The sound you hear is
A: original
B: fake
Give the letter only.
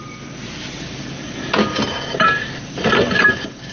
A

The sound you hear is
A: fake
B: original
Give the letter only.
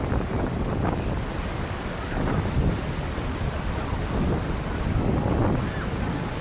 B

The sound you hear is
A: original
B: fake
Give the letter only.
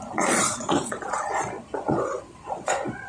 B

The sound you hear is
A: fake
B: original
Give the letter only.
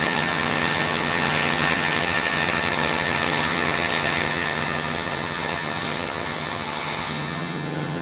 A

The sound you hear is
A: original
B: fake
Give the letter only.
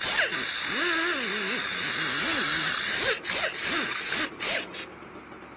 A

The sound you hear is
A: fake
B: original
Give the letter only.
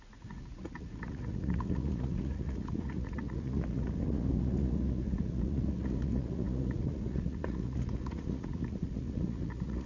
A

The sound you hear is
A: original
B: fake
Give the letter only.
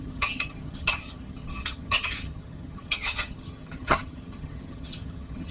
B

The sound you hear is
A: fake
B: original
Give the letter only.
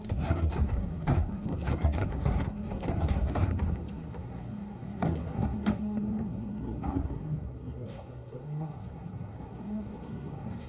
A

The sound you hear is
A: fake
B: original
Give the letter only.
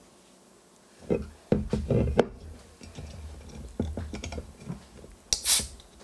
B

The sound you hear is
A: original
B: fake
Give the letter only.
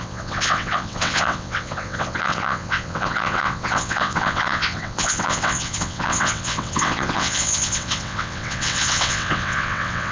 B